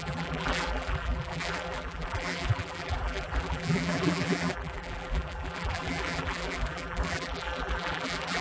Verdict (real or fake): fake